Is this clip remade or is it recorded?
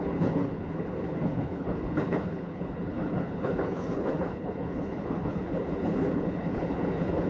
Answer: remade